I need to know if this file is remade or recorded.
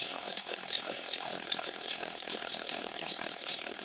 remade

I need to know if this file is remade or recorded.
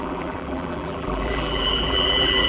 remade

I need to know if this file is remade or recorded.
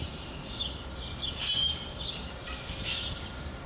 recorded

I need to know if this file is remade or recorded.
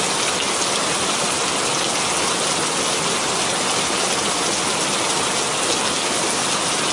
recorded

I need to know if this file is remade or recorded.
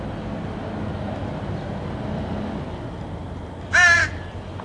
recorded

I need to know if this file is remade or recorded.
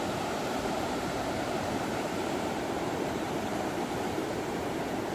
remade